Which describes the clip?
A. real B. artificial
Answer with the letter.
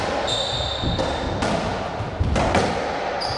A